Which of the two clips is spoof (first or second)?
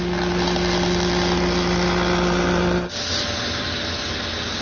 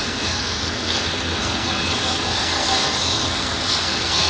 second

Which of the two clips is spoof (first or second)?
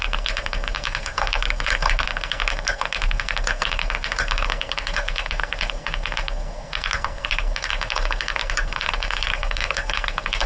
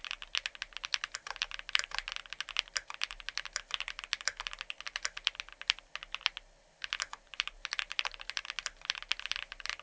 first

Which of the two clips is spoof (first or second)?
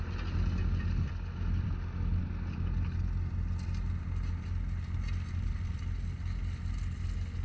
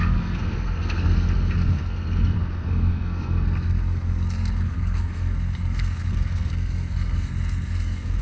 second